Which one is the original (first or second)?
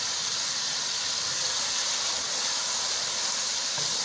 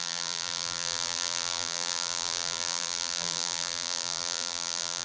first